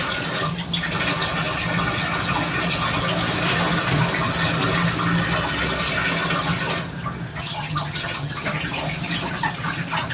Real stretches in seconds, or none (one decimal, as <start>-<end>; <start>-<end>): 0.0-7.3; 8.6-10.1